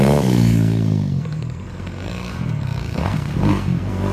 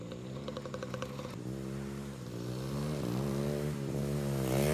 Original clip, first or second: second